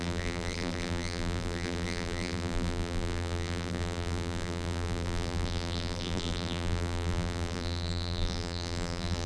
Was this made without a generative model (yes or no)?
no